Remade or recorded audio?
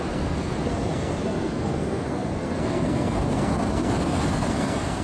remade